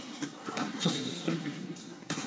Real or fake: fake